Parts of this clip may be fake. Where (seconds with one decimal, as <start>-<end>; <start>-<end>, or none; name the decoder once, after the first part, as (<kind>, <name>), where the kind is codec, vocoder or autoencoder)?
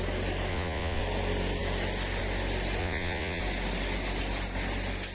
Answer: 0.5-1.0 (vocoder, Vocos); 2.8-3.4